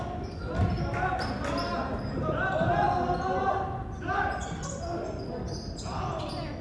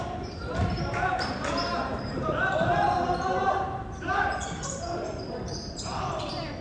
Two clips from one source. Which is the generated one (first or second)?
second